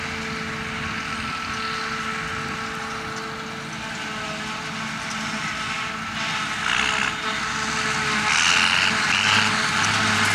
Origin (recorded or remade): recorded